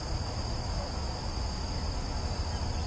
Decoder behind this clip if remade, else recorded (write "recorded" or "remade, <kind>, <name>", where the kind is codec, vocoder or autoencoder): recorded